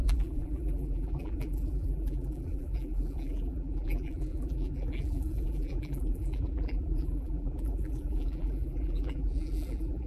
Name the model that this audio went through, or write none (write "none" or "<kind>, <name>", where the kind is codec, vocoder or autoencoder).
vocoder, BigVGAN v2